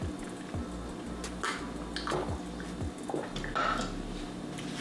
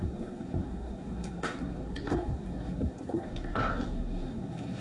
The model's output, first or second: second